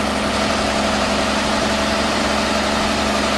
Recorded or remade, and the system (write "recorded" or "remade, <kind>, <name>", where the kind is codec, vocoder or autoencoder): recorded